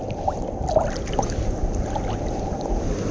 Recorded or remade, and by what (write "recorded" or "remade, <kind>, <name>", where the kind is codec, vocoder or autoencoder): recorded